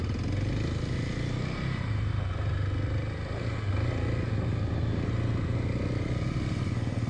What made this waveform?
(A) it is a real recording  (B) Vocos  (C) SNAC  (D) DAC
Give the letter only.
A